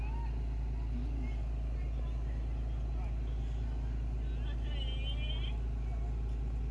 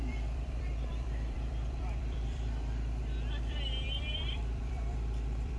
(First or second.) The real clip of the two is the first